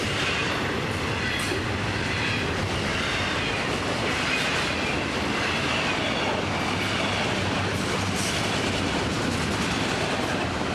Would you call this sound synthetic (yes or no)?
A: no